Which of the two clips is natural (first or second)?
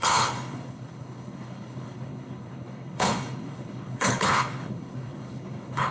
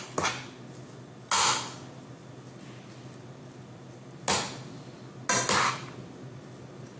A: second